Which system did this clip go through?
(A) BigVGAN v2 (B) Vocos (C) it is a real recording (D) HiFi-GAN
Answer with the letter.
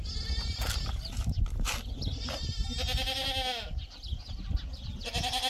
C